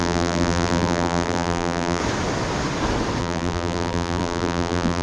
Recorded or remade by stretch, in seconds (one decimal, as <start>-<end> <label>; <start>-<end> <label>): 0.0-2.0 remade; 2.0-3.2 recorded; 3.2-5.0 remade